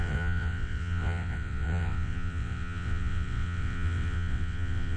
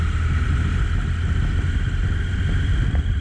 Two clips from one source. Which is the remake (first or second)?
first